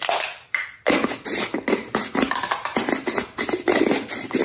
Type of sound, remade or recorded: recorded